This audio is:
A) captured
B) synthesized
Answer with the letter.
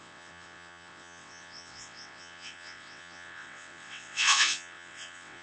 B